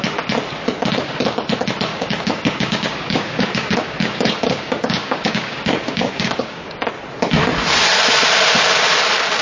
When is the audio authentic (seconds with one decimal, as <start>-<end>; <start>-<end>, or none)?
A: 0.0-1.9; 6.9-9.4